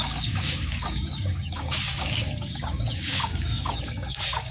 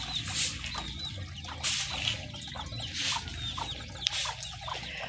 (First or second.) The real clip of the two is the second